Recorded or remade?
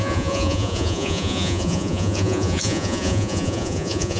remade